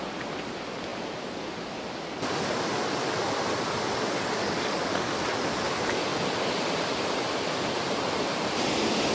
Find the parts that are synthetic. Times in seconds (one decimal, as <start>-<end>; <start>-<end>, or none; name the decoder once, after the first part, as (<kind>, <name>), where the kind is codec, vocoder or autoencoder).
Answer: 4.4-5.2 (codec, DAC)